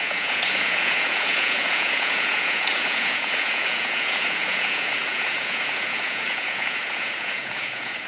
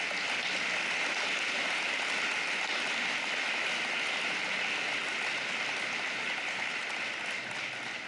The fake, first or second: first